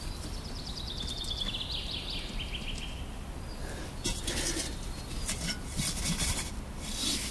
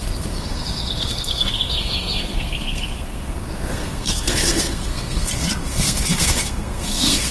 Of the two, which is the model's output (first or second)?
second